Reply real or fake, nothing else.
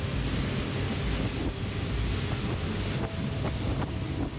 real